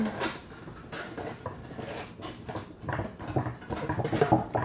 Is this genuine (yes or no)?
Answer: yes